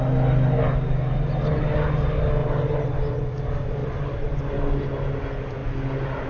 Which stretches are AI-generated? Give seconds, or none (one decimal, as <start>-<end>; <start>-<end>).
2.4-3.1; 3.8-4.5